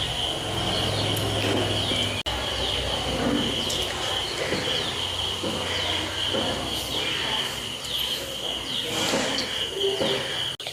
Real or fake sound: real